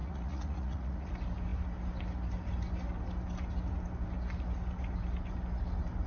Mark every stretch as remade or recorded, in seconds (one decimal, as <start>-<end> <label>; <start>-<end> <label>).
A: 0.0-1.1 remade; 1.1-6.1 recorded